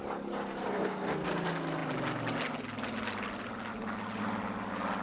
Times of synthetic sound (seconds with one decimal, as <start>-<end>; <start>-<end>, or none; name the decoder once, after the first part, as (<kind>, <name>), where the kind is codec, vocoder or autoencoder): 0.6-1.3 (codec, SNAC)